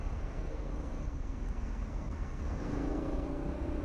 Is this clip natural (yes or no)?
no